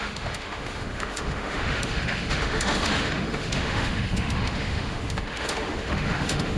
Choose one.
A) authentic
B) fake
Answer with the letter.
B